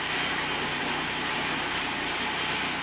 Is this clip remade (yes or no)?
no